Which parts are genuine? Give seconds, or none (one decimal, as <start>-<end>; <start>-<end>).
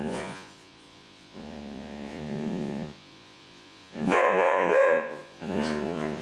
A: none